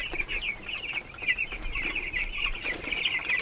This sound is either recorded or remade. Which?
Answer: recorded